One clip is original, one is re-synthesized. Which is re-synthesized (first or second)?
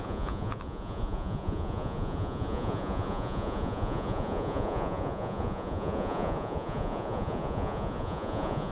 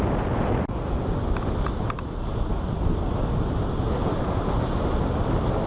first